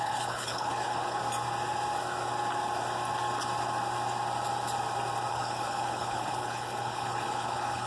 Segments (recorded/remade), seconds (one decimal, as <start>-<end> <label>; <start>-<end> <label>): 0.0-1.2 remade; 1.2-5.3 recorded; 5.3-7.9 remade